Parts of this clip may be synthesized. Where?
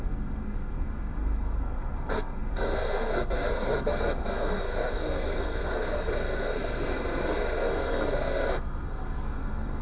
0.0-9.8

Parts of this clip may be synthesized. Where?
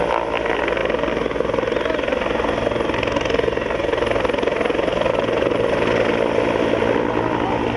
none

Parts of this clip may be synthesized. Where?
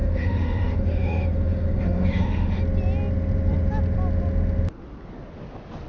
0.0-2.6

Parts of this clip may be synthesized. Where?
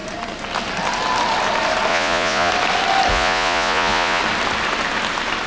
1.9-2.5; 3.1-4.2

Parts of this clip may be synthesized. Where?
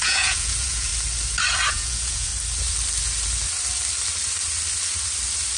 0.0-0.9; 1.7-2.3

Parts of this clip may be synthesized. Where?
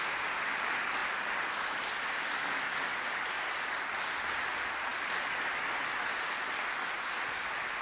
1.0-3.8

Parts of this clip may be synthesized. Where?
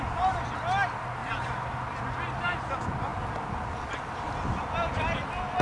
none